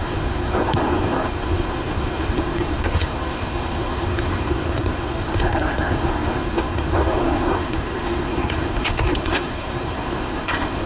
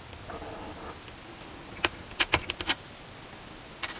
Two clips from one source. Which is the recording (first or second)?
second